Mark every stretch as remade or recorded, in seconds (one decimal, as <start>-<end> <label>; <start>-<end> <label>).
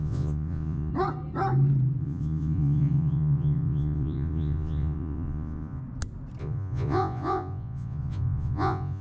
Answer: 0.0-0.9 remade; 0.9-2.0 recorded; 2.0-5.8 remade; 5.8-6.4 recorded; 6.4-9.0 remade